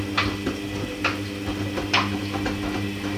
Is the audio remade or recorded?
recorded